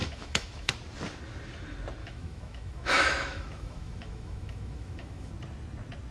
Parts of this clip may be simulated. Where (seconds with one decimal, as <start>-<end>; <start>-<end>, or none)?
0.0-0.7; 2.0-5.3